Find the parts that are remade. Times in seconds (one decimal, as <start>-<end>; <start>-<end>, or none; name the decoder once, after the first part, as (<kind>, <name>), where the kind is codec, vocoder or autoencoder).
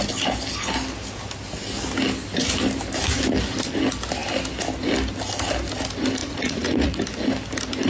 6.2-7.0 (vocoder, Vocos)